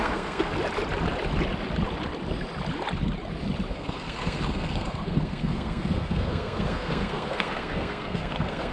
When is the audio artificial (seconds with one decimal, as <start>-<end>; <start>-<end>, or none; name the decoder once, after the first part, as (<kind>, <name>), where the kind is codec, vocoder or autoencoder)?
0.0-0.5 (codec, SNAC); 3.7-8.7